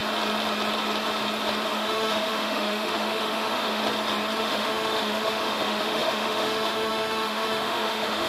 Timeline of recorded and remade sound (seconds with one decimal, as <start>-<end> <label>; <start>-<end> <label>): 0.0-1.7 recorded; 1.7-3.8 remade; 3.8-4.4 recorded; 4.4-8.3 remade